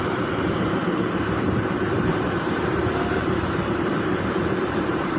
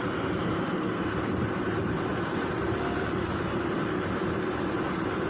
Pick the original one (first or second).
second